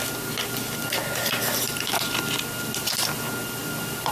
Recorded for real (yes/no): yes